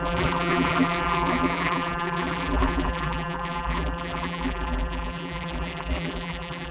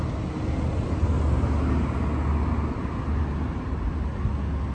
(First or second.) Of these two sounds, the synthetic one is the first